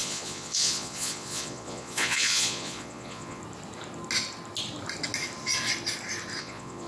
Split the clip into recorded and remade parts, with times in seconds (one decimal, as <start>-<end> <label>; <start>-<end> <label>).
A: 0.0-3.4 remade; 3.4-6.4 recorded; 6.4-6.9 remade